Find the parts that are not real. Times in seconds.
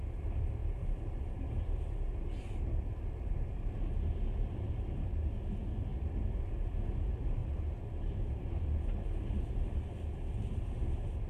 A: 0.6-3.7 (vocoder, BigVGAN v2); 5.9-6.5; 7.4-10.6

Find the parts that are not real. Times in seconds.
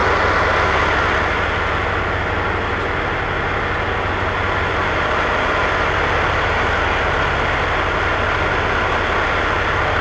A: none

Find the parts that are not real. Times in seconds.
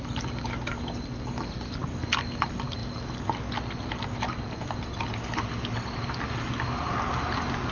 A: none